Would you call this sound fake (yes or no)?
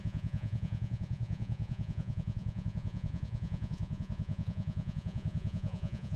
yes